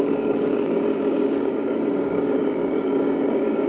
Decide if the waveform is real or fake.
fake